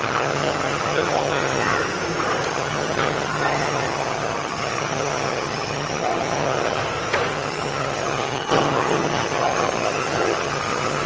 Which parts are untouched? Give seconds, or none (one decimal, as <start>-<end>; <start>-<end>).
1.8-2.5; 6.8-7.3